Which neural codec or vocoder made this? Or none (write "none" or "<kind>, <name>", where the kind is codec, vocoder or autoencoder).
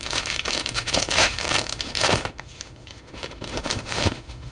autoencoder, DAC-VAE